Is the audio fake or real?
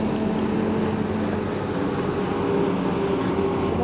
real